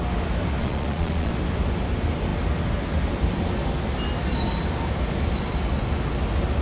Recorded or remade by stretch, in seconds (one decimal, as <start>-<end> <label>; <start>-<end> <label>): 0.0-0.6 recorded; 0.6-1.3 remade; 1.3-6.6 recorded